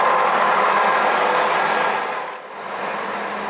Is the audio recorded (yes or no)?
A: yes